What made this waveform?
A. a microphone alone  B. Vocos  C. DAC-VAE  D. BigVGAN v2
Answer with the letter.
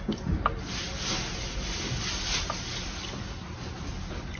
A